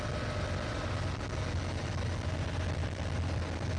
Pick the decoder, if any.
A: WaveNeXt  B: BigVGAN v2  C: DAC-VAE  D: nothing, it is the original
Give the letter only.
D